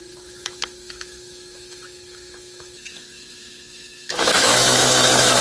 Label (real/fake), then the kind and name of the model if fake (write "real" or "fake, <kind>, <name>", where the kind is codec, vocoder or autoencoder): fake, autoencoder, DAC-VAE